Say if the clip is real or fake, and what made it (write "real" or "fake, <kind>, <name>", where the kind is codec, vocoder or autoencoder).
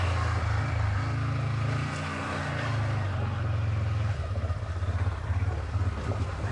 real